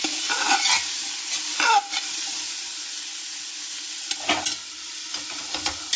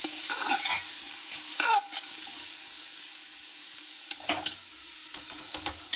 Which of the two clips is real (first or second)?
first